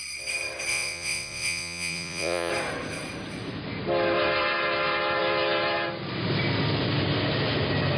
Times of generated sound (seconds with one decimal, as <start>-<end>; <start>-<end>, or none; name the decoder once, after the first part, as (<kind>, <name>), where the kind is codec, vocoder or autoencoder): 0.7-2.5 (vocoder, Vocos)